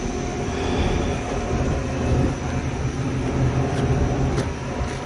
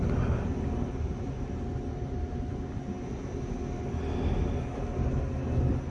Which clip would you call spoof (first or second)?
first